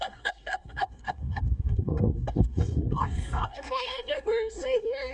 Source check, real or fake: fake